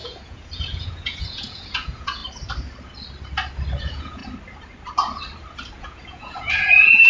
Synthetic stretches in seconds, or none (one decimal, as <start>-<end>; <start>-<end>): 0.0-2.2; 3.8-4.2; 5.8-7.1